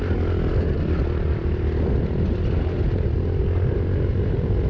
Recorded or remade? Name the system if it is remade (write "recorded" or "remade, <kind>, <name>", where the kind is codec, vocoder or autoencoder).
recorded